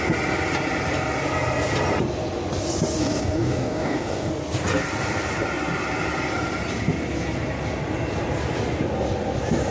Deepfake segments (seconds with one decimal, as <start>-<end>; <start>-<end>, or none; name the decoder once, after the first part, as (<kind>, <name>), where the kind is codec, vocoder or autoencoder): 3.0-4.3 (codec, DAC)